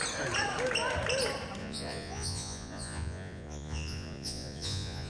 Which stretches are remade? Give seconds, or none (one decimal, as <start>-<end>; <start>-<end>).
1.6-5.1